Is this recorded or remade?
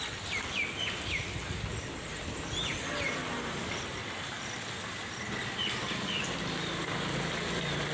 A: recorded